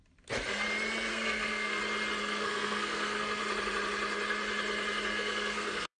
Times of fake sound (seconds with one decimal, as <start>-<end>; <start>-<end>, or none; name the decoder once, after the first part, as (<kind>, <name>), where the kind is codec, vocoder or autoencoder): 1.1-1.8 (codec, SNAC); 2.2-3.4; 5.1-6.0